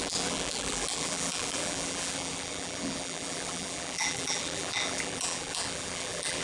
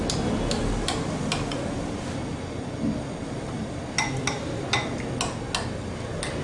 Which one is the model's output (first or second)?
first